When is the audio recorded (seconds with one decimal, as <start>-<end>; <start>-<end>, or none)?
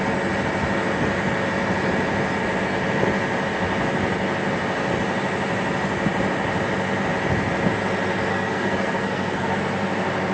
0.0-8.3; 9.6-10.3